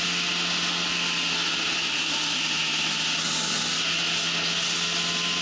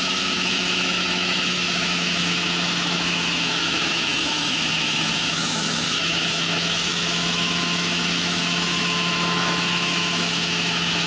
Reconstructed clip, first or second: second